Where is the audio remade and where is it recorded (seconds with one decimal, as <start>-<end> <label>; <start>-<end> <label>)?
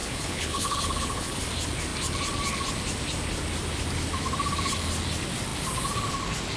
0.0-1.4 remade; 1.4-6.6 recorded